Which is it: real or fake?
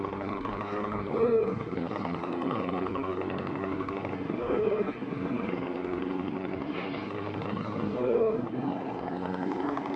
fake